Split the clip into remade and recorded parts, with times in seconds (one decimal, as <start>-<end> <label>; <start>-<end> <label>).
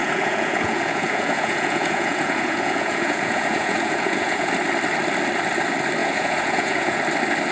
0.0-4.5 remade; 4.5-6.0 recorded; 6.0-7.0 remade; 7.0-7.5 recorded